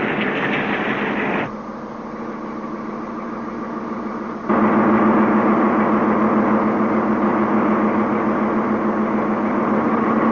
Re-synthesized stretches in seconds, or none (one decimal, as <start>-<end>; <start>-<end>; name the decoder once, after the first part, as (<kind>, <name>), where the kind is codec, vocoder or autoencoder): none